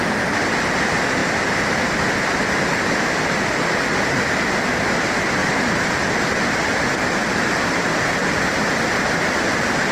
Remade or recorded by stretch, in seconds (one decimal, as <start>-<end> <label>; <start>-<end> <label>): 0.0-1.2 recorded; 1.2-2.3 remade; 2.3-5.4 recorded; 5.4-9.3 remade; 9.3-9.9 recorded